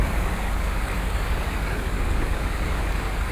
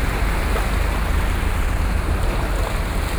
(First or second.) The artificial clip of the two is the first